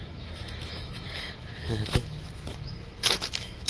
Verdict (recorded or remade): remade